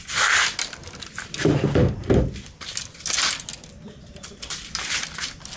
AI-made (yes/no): no